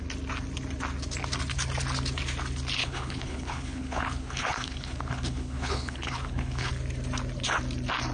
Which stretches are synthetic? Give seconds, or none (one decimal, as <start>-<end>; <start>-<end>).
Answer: 2.8-6.7